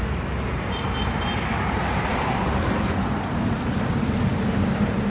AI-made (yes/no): yes